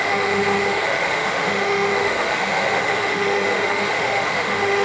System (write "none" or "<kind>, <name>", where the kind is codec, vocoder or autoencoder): autoencoder, DAC-VAE